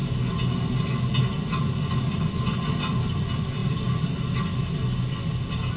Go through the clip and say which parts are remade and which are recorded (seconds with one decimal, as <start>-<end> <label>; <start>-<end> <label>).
0.0-5.8 recorded